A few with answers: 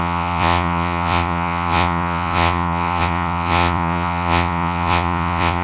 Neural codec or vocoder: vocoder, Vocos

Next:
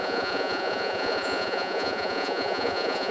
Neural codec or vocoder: vocoder, Vocos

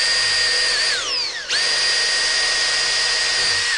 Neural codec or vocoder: none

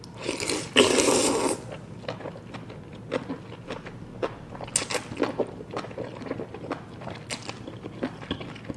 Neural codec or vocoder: none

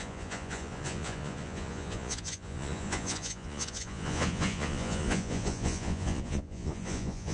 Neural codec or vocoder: vocoder, Vocos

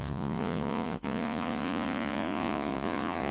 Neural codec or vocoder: vocoder, Vocos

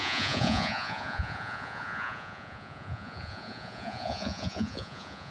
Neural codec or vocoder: vocoder, Vocos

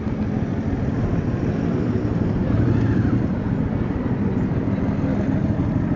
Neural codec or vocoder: none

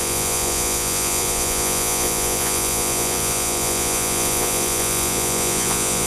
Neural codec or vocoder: vocoder, Vocos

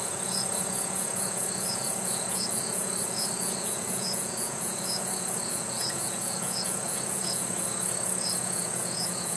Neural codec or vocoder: vocoder, Vocos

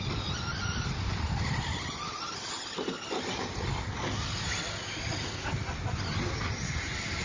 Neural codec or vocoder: none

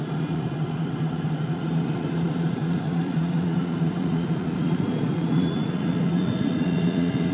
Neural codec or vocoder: vocoder, Vocos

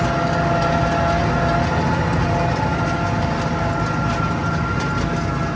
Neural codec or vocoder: none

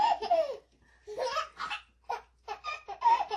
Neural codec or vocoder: none